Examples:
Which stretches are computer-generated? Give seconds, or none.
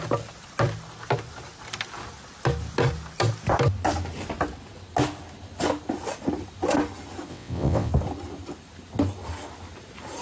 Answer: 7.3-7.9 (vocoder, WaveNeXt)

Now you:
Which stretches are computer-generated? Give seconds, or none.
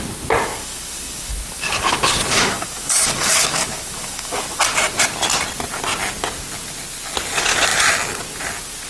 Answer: 0.5-4.6 (codec, DAC)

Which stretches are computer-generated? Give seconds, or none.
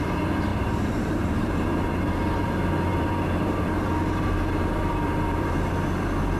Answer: 0.5-2.5 (vocoder, BigVGAN v2); 2.9-5.7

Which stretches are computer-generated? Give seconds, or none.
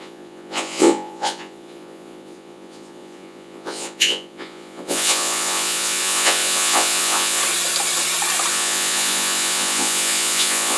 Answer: 0.0-7.4 (vocoder, Vocos); 8.5-10.8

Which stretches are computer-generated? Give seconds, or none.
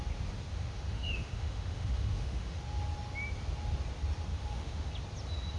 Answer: 0.5-2.6 (autoencoder, DAC-VAE); 4.3-4.9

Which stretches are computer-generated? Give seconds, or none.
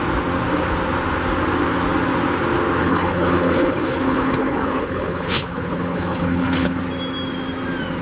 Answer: 2.8-6.8 (codec, HILCodec)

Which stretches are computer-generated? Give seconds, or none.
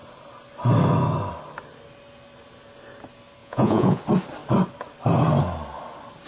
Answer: 3.4-4.0 (vocoder, Vocos)